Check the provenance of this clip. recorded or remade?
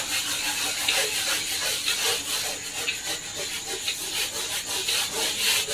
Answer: recorded